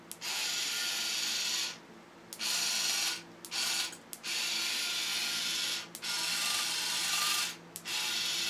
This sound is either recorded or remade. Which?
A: recorded